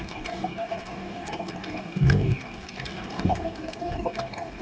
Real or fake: fake